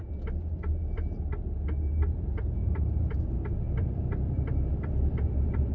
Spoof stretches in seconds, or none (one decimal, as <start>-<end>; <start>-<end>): 2.6-3.7; 4.7-5.7